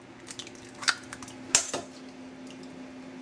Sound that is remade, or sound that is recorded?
recorded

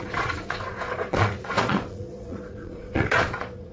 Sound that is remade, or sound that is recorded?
remade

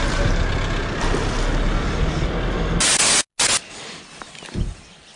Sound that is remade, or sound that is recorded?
recorded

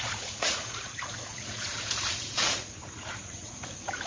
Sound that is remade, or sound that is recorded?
remade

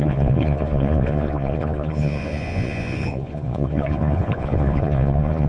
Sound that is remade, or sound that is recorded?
remade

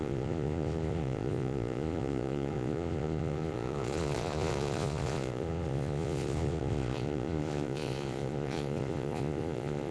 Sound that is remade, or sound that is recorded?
remade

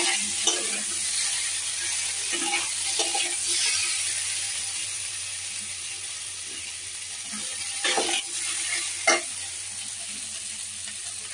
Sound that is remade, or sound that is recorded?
recorded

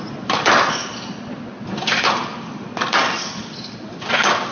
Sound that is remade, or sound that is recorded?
recorded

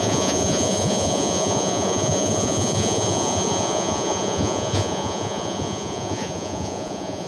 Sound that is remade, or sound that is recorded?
remade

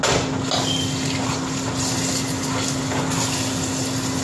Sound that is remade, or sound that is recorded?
recorded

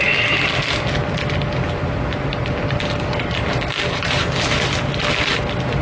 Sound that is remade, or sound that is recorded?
recorded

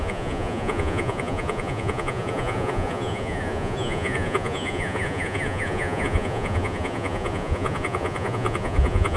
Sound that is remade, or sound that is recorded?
remade